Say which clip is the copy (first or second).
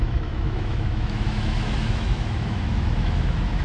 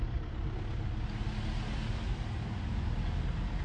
first